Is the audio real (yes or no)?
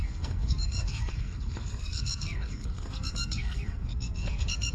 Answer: no